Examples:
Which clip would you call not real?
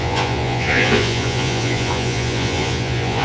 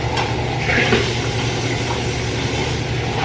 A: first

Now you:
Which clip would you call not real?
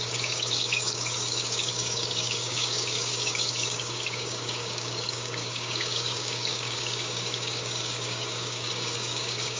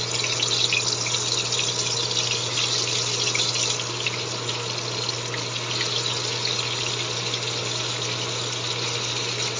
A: first